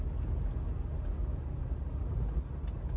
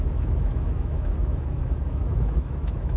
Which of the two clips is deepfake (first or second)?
second